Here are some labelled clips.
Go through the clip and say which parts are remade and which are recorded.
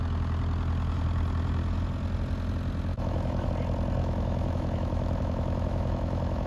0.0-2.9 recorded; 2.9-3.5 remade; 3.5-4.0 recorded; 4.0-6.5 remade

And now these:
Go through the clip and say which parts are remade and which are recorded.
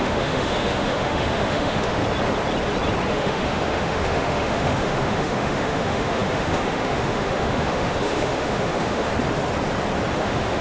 0.0-2.0 remade; 2.0-3.1 recorded; 3.1-9.1 remade; 9.1-10.1 recorded; 10.1-10.6 remade